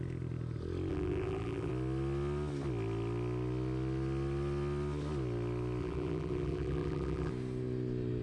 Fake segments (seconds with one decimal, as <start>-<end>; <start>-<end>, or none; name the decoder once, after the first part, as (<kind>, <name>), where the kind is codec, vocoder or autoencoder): 0.9-1.7 (vocoder, BigVGAN v2); 5.8-7.3